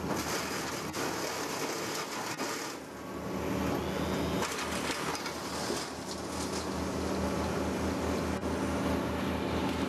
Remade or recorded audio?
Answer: recorded